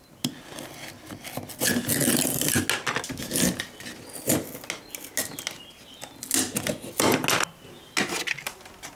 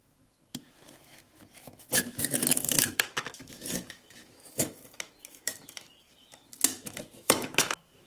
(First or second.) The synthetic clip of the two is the second